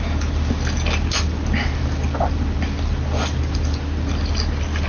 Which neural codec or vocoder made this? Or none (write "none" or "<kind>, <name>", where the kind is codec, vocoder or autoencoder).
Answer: none